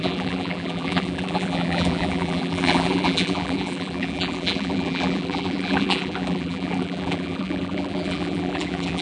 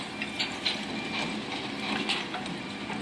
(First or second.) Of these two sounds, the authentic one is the second